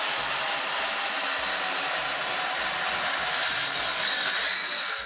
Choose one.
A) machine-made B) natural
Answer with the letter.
B